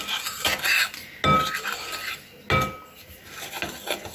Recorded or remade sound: recorded